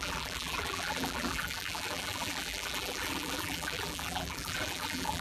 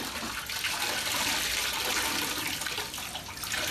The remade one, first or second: first